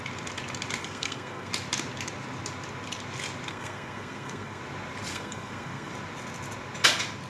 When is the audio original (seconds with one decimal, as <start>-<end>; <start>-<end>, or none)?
0.0-0.8; 1.5-3.5; 4.6-5.1; 5.9-7.3